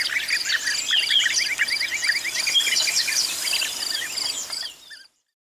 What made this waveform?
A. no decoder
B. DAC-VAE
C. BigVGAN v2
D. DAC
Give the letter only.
A